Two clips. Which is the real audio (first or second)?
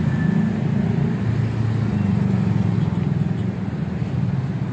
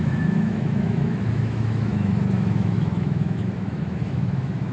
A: first